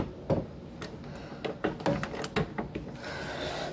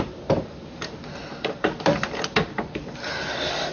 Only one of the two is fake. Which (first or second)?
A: second